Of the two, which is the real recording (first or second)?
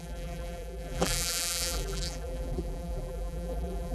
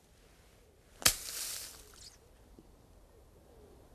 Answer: second